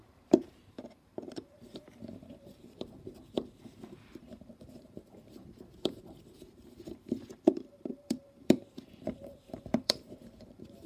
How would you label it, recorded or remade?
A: remade